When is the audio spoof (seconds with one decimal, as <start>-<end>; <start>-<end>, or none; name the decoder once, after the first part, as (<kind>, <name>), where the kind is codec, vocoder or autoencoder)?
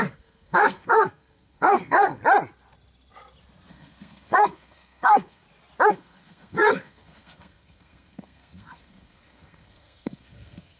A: 0.0-2.2 (codec, SNAC); 3.7-5.4; 5.9-10.8